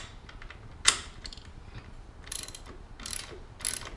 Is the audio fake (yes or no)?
no